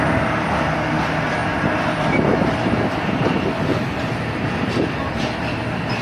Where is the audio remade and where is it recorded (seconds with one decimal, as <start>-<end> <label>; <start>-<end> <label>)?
0.0-6.0 recorded